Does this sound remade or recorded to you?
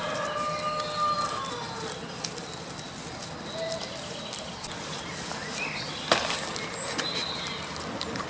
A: recorded